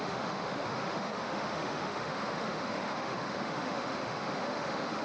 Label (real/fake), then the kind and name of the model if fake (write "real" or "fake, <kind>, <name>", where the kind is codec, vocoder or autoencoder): fake, autoencoder, DAC-VAE